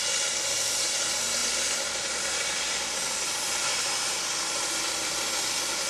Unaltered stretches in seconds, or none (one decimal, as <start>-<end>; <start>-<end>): 0.0-5.9